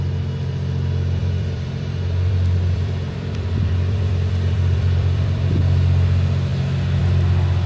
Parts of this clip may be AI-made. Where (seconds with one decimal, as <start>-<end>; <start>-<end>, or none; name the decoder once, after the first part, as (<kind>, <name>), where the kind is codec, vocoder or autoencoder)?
1.2-5.6 (vocoder, BigVGAN v2)